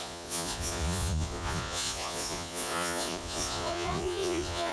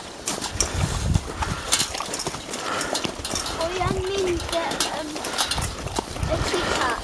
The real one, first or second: second